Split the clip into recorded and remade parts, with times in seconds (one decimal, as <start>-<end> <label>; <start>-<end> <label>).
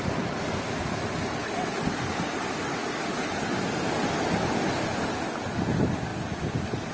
0.0-6.9 recorded